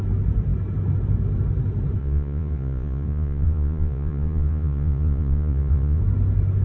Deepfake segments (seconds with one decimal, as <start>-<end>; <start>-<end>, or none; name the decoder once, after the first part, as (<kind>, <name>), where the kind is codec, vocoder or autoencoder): 2.0-6.0 (vocoder, Vocos)

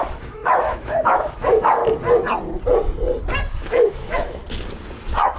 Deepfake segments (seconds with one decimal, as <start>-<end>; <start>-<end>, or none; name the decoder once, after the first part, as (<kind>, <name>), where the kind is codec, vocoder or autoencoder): 0.0-1.8 (autoencoder, DAC-VAE); 3.5-4.4